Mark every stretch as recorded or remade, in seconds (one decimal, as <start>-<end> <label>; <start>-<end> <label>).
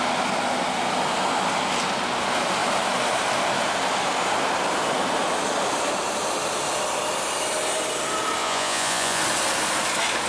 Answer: 0.0-8.4 recorded; 8.4-9.2 remade; 9.2-10.3 recorded